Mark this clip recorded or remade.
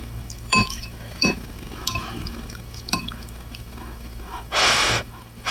remade